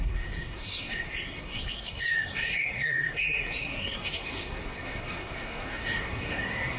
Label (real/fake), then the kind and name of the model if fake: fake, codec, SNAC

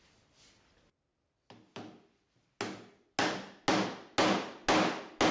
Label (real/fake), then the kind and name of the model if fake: real